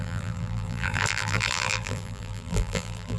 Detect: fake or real fake